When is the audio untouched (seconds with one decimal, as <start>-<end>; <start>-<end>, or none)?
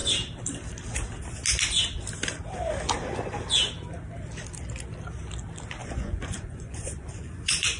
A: 0.0-5.8